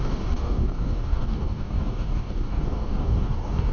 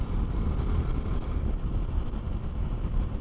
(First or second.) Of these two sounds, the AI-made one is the first